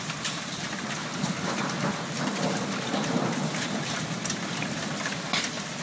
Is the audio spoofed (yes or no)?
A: no